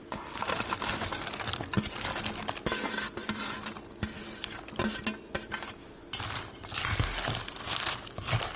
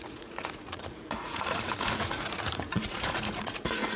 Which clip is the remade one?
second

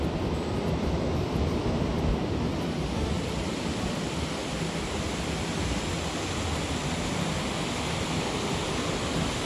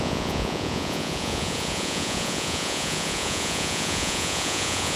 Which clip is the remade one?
second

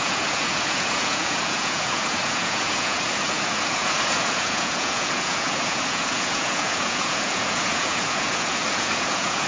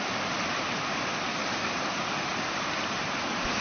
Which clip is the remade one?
first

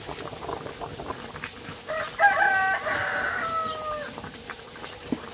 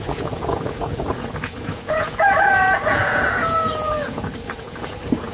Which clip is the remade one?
second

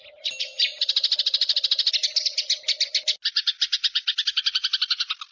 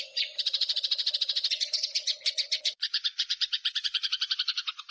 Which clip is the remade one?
second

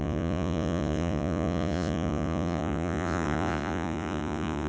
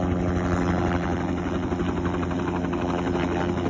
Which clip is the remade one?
first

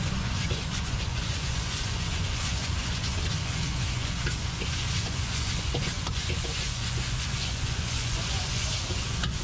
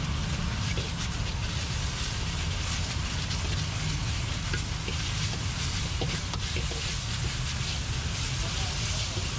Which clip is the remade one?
first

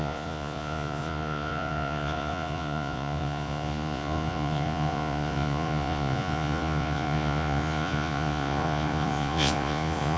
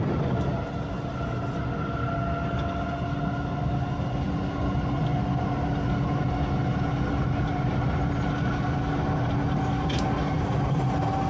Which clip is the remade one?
first